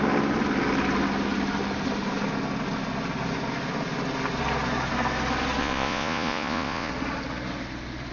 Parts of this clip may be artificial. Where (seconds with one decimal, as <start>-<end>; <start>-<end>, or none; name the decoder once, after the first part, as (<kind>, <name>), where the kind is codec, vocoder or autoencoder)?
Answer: 5.6-6.9 (vocoder, Vocos)